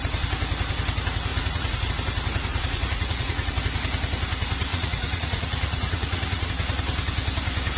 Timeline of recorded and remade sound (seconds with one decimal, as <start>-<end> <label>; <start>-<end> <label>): 0.0-1.3 recorded; 1.3-1.9 remade; 1.9-2.5 recorded; 2.5-3.6 remade; 3.6-4.7 recorded; 4.7-6.5 remade; 6.5-7.8 recorded